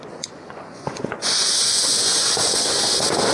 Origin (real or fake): fake